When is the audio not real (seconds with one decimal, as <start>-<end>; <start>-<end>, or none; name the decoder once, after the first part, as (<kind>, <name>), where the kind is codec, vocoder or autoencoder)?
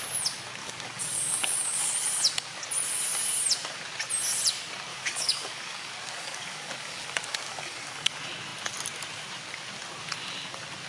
0.6-1.9 (codec, DAC); 4.9-8.1